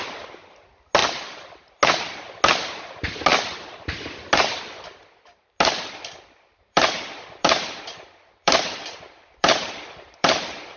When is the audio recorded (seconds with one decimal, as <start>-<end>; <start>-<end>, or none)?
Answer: 0.0-6.5